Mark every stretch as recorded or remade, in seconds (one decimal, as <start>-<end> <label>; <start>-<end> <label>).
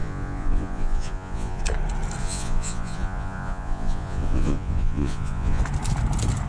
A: 0.0-1.6 remade; 1.6-2.2 recorded; 2.2-5.6 remade; 5.6-6.5 recorded